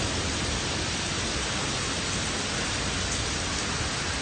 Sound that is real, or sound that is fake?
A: real